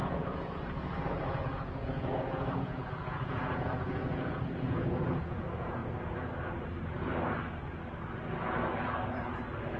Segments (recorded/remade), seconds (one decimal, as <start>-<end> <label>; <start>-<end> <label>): 0.0-5.8 remade; 5.8-9.8 recorded